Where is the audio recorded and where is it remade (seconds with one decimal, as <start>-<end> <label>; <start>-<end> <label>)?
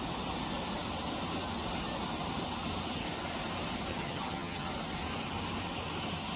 0.0-3.9 recorded; 3.9-4.7 remade; 4.7-6.4 recorded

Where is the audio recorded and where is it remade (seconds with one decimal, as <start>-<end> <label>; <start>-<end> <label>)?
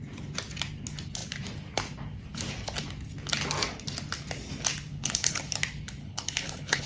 0.0-4.9 recorded; 4.9-5.4 remade; 5.4-6.0 recorded; 6.0-6.9 remade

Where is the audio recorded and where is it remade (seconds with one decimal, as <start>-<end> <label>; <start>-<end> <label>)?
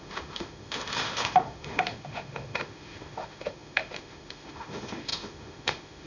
0.0-6.1 remade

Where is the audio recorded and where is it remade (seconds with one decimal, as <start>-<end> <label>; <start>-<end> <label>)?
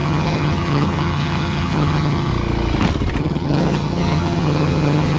0.0-2.3 remade; 2.3-3.2 recorded; 3.2-5.2 remade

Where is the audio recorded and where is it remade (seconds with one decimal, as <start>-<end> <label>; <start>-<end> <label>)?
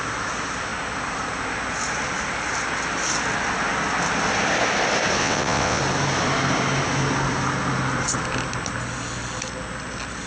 0.0-5.2 recorded; 5.2-5.8 remade; 5.8-10.3 recorded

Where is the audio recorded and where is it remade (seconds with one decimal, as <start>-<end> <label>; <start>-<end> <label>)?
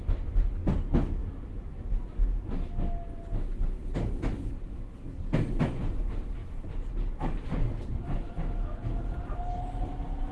0.0-10.3 recorded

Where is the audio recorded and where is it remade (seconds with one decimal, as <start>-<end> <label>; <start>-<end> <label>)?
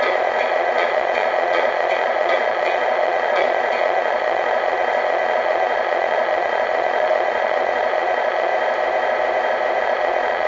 0.0-8.5 remade; 8.5-9.8 recorded; 9.8-10.5 remade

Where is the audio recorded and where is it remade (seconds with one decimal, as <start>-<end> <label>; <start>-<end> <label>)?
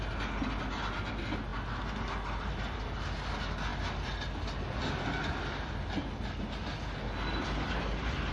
0.0-8.3 recorded